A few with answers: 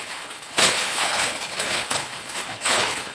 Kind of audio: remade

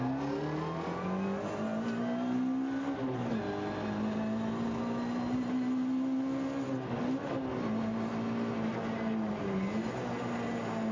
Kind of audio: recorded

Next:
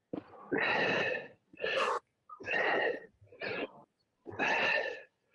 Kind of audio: remade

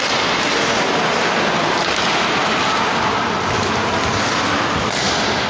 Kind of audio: recorded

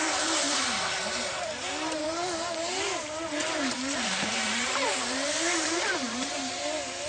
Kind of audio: remade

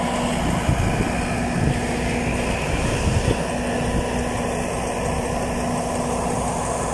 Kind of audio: recorded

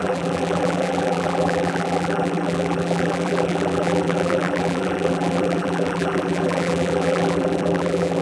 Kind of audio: remade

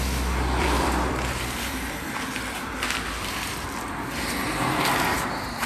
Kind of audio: remade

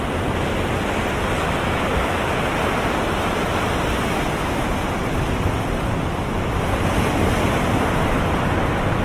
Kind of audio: recorded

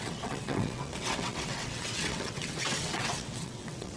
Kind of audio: remade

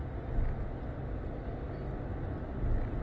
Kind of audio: recorded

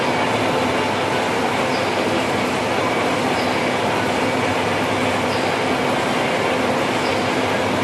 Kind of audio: recorded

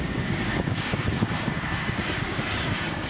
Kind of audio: remade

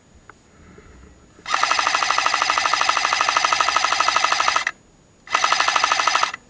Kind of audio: recorded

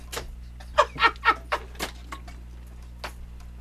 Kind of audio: recorded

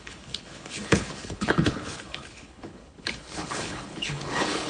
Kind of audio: remade